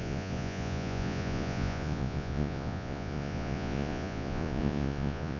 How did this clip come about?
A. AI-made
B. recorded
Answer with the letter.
A